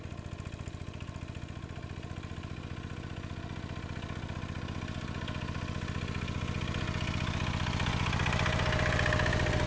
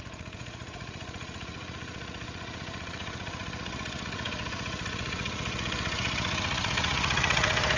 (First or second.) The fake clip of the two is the second